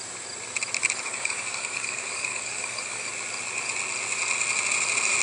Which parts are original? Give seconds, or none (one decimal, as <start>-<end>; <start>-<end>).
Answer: 0.0-0.8; 3.1-5.2